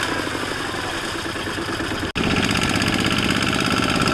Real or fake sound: real